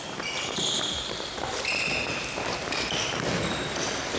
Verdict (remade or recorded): recorded